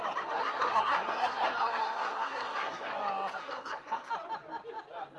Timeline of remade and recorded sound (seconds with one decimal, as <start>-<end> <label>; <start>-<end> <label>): 0.0-0.4 recorded; 0.4-2.9 remade; 2.9-3.4 recorded; 3.4-4.1 remade; 4.1-5.2 recorded